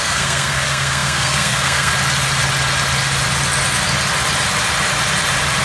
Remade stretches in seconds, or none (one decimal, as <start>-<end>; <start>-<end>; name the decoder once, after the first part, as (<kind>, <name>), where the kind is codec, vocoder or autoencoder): 0.0-1.9 (codec, SNAC)